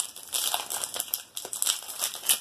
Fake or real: real